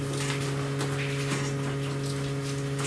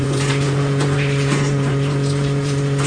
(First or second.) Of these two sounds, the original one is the first